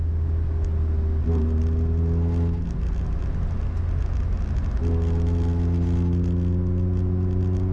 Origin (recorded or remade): recorded